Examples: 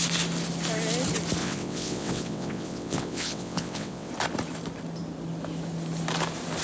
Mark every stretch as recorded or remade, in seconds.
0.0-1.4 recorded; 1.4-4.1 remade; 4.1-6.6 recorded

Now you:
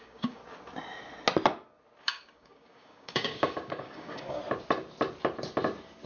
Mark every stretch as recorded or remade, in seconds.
0.0-0.4 remade; 0.4-2.0 recorded; 2.0-4.4 remade; 4.4-6.1 recorded

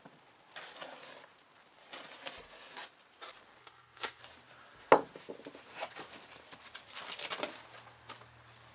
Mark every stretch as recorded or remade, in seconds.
0.0-3.6 recorded; 3.6-4.2 remade; 4.2-8.7 recorded

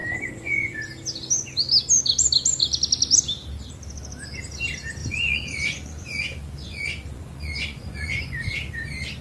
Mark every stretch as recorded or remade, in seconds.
0.0-0.8 remade; 0.8-5.0 recorded; 5.0-8.5 remade; 8.5-9.2 recorded

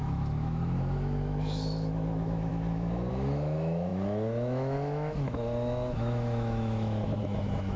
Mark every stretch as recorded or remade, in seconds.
0.0-7.8 remade

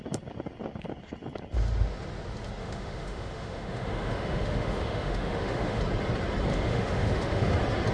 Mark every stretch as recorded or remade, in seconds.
0.0-2.6 recorded; 2.6-5.8 remade; 5.8-6.5 recorded; 6.5-7.5 remade; 7.5-7.9 recorded